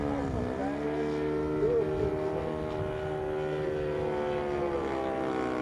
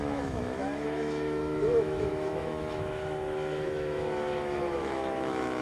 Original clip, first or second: first